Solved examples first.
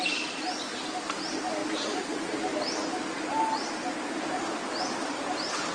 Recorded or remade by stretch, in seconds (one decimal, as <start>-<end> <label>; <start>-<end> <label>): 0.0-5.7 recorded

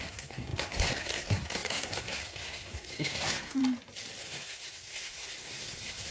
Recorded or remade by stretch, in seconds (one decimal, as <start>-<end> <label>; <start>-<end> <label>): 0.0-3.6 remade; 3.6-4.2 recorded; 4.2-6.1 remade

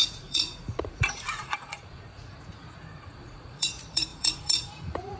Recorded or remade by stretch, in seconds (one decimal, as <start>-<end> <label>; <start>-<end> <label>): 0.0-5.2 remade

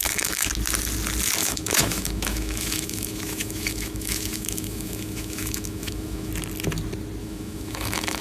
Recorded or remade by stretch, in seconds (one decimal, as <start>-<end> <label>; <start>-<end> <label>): 0.0-0.5 remade; 0.5-1.4 recorded; 1.4-6.3 remade; 6.3-7.2 recorded; 7.2-8.2 remade

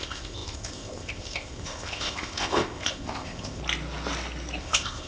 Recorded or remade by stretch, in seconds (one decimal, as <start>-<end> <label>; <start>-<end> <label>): 0.0-3.6 remade; 3.6-4.6 recorded; 4.6-5.1 remade

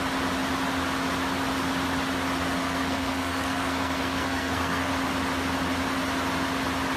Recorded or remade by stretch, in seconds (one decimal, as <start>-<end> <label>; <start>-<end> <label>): 0.0-2.6 recorded; 2.6-4.9 remade; 4.9-7.0 recorded